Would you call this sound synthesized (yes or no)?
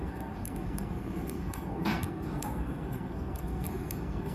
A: yes